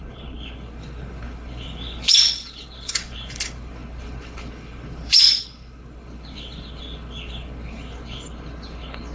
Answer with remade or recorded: remade